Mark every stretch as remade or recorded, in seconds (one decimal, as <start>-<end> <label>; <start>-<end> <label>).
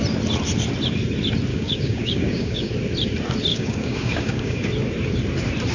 0.0-1.5 recorded; 1.5-2.7 remade; 2.7-3.5 recorded; 3.5-4.7 remade; 4.7-5.7 recorded